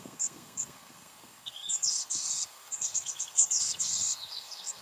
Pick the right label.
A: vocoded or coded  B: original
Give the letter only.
A